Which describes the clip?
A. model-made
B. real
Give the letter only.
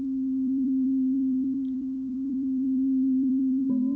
A